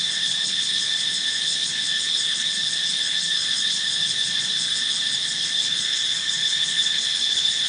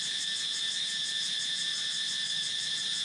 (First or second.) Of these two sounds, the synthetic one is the first